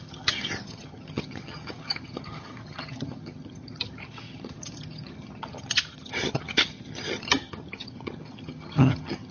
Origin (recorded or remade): remade